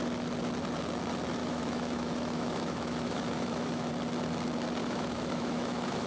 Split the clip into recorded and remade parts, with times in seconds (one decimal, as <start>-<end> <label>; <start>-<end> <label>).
0.0-1.4 recorded; 1.4-3.9 remade; 3.9-4.8 recorded; 4.8-6.1 remade